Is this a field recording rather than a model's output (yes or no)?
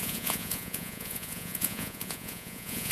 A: no